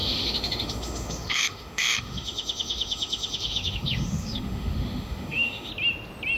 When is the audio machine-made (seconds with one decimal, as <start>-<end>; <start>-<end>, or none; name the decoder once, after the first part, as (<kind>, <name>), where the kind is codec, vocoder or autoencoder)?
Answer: 0.0-5.7 (autoencoder, DAC-VAE)